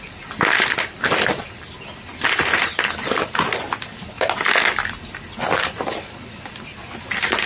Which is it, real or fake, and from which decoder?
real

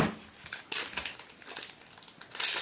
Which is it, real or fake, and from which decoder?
real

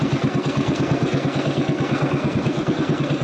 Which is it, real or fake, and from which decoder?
fake, codec, SNAC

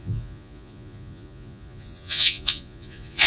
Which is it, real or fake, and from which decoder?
fake, vocoder, Vocos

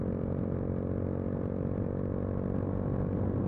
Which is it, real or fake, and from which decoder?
real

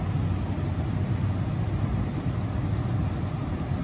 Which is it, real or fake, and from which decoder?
real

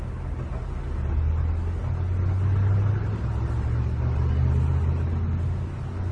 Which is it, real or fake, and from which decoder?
real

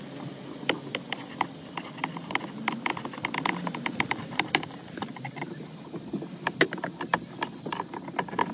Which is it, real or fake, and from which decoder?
real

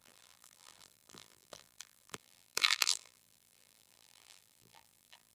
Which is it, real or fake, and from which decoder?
fake, vocoder, BigVGAN v2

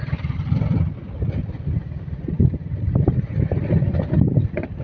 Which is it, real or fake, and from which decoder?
real